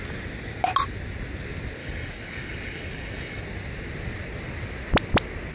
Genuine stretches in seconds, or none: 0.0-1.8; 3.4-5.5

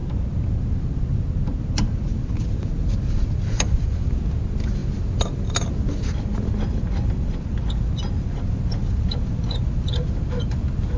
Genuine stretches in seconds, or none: 0.0-11.0

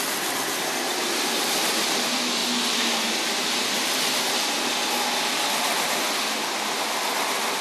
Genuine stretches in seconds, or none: 0.0-7.6

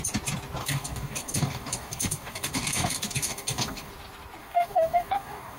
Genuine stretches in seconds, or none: 0.0-0.6; 3.9-4.4

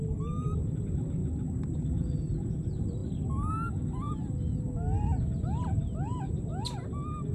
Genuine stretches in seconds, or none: 0.0-7.3